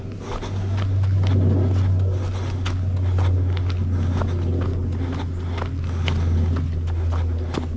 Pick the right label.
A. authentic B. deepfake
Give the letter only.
A